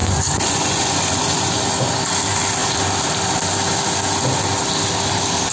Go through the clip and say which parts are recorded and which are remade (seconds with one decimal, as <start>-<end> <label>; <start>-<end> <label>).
0.0-1.6 remade; 1.6-5.5 recorded